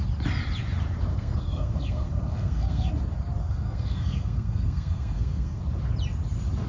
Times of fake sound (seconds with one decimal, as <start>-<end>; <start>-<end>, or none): 1.1-2.9; 3.4-5.6